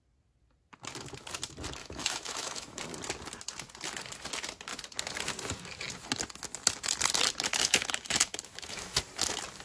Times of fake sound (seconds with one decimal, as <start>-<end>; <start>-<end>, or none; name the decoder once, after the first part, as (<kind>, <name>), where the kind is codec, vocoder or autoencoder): 1.8-2.8 (autoencoder, DAC-VAE); 7.5-9.0